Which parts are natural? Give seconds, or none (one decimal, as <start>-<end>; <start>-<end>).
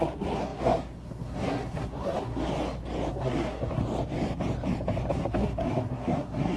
2.5-3.1; 3.8-5.1